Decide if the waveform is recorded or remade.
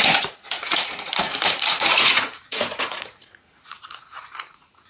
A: remade